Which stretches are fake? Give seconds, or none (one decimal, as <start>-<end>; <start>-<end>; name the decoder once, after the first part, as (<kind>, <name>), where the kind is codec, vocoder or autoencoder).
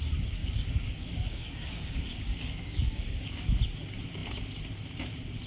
0.4-3.6 (codec, DAC)